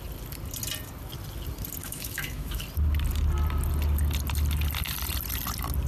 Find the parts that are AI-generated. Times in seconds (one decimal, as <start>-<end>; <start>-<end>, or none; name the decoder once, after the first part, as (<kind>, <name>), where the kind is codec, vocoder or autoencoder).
1.8-2.6 (autoencoder, DAC-VAE)